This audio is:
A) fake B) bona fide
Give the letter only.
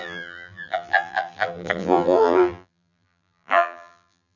A